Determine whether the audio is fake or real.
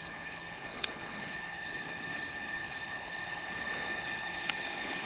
fake